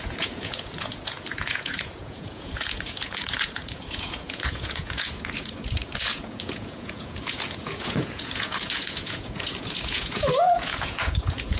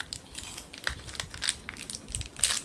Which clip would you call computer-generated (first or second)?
first